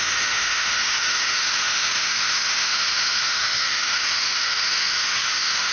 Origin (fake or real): fake